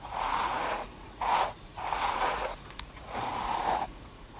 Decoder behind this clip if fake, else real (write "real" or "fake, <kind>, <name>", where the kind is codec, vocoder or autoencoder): fake, vocoder, Vocos